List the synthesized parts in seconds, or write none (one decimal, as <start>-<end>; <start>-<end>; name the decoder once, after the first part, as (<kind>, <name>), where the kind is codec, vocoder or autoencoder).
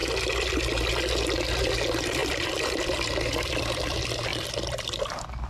1.6-5.5 (vocoder, BigVGAN v2)